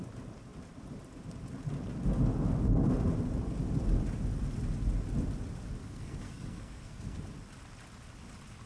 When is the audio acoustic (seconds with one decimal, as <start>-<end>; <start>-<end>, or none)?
0.0-5.8; 7.2-8.7